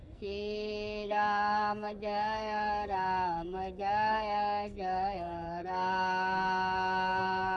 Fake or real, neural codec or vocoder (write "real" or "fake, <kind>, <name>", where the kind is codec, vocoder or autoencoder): fake, codec, SNAC